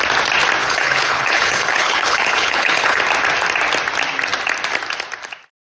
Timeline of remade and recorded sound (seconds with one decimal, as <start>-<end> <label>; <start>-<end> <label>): 0.0-0.6 recorded; 0.6-3.0 remade; 3.0-5.7 recorded